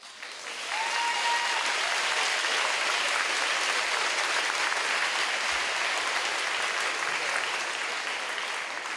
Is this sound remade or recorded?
recorded